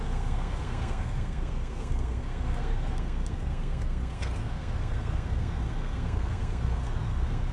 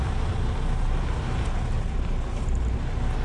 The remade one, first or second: first